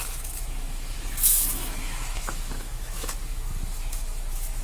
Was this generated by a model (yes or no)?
yes